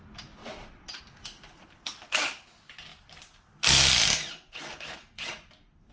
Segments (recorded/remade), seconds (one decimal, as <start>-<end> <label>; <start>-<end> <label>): 0.0-0.4 recorded; 0.4-1.0 remade; 1.0-5.9 recorded